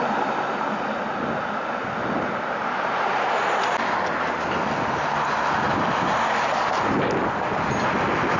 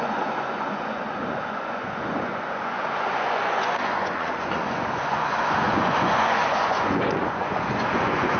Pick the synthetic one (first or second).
second